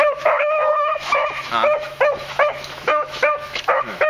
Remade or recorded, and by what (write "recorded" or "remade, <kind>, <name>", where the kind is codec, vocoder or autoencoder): remade, autoencoder, DAC-VAE